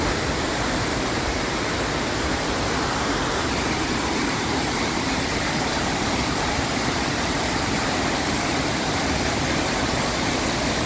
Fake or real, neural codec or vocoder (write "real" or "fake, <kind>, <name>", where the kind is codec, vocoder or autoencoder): fake, vocoder, BigVGAN v2